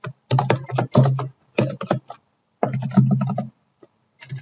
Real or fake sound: real